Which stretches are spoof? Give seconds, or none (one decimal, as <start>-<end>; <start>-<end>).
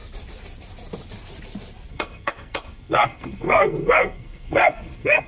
1.9-5.3